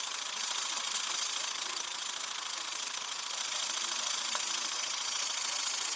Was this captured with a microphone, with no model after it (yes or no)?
no